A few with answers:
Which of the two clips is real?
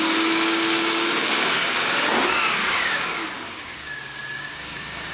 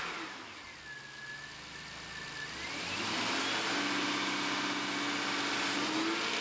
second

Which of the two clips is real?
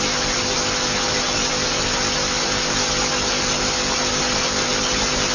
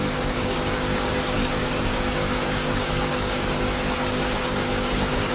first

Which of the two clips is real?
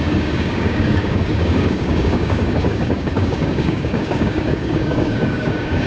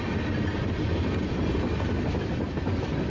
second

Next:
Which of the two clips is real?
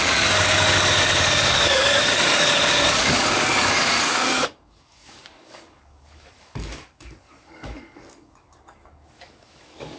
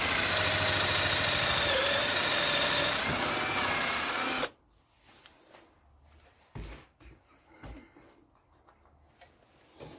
second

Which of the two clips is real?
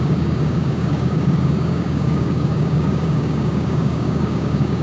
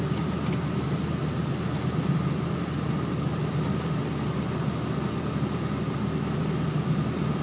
second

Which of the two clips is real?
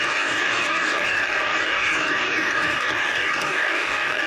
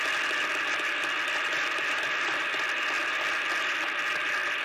second